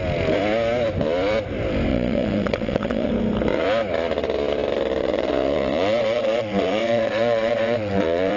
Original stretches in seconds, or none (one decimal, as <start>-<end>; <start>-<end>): 0.0-1.9; 3.1-5.0

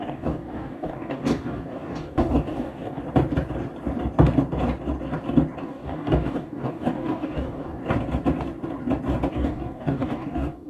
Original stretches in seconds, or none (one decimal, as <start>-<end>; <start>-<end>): 3.0-5.6; 7.8-9.3

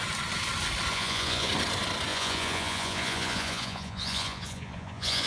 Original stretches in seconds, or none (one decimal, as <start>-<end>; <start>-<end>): 0.0-0.9; 1.5-2.1

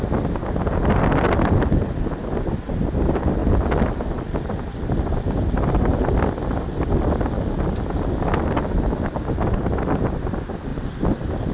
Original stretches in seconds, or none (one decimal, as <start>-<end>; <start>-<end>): 0.0-11.5